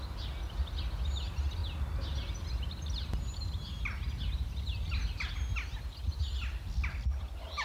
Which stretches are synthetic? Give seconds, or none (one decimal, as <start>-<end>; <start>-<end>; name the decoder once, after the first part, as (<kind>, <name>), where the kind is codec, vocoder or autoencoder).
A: none